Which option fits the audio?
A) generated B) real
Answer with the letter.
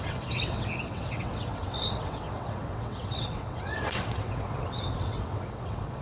A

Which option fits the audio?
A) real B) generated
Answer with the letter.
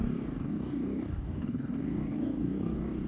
B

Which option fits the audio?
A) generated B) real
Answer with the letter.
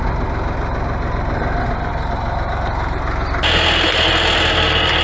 B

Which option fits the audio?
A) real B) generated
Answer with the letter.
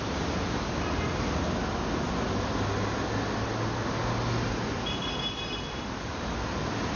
A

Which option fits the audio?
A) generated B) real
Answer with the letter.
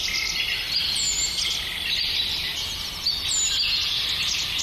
B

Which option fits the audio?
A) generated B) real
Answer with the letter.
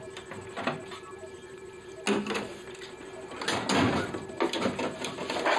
B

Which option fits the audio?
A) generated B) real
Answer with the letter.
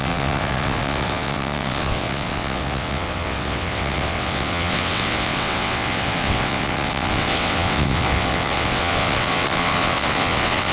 A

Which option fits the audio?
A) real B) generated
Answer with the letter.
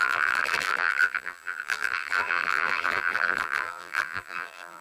B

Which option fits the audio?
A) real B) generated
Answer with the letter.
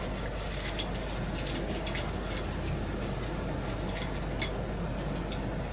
A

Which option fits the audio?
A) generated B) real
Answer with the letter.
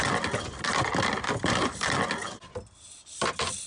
B